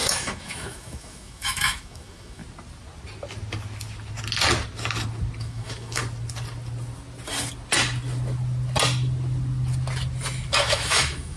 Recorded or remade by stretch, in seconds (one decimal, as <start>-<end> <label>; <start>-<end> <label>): 0.0-2.4 remade; 2.4-5.4 recorded; 5.4-6.0 remade; 6.0-10.5 recorded; 10.5-11.4 remade